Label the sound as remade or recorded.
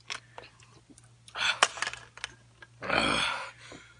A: recorded